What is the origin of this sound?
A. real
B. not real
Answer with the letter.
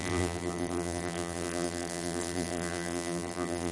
B